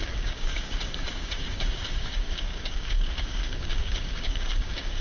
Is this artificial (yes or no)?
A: yes